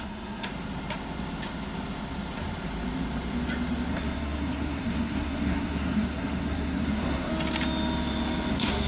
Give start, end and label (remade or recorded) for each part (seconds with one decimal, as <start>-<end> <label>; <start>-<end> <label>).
0.0-0.5 remade; 0.5-3.9 recorded; 3.9-7.3 remade; 7.3-8.5 recorded; 8.5-8.9 remade

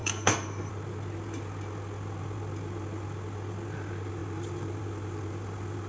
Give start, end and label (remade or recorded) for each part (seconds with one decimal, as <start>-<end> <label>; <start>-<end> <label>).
0.0-0.7 remade; 0.7-5.9 recorded

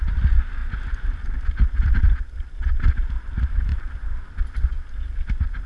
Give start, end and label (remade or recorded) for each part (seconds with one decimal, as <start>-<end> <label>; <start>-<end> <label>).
0.0-5.7 recorded

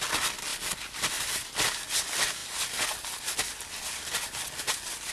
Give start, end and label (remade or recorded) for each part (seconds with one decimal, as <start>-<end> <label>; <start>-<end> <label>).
0.0-0.5 recorded; 0.5-1.4 remade; 1.4-5.1 recorded

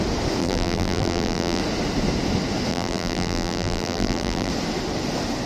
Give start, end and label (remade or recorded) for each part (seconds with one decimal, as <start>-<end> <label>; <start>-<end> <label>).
0.0-0.4 recorded; 0.4-1.6 remade; 1.6-2.7 recorded; 2.7-4.5 remade; 4.5-5.5 recorded

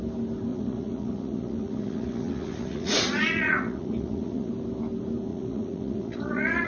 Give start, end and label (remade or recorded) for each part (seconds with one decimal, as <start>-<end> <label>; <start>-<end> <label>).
0.0-0.5 recorded; 0.5-4.5 remade; 4.5-5.3 recorded; 5.3-6.7 remade

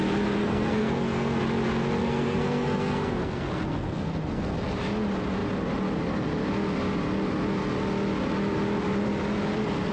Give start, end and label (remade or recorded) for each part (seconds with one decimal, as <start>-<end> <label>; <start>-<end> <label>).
0.0-0.4 recorded; 0.4-1.4 remade; 1.4-2.0 recorded; 2.0-4.5 remade; 4.5-9.9 recorded

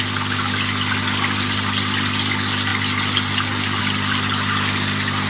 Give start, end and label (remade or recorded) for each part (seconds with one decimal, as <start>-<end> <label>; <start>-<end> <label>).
0.0-5.3 recorded